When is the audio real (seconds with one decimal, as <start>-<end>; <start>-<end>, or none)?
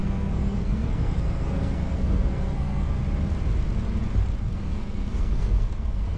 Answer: 3.0-4.4